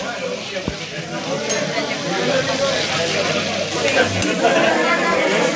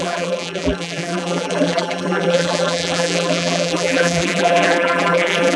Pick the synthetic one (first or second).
second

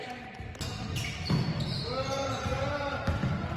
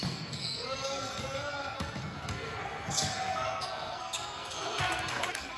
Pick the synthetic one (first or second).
second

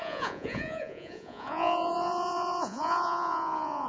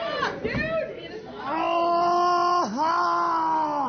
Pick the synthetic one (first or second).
first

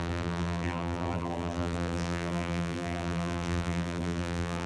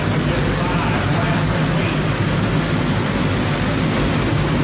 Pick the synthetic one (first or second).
first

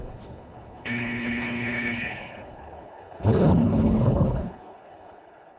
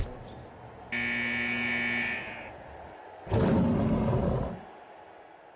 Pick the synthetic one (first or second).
first